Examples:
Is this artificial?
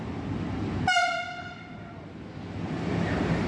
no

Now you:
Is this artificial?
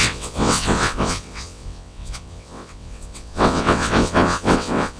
yes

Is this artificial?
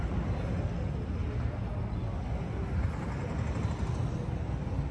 no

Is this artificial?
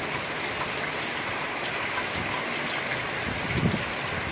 no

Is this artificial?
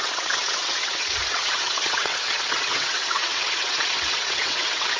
yes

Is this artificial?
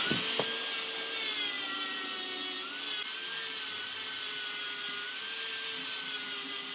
no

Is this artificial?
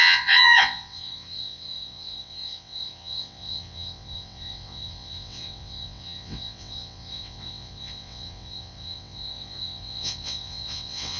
yes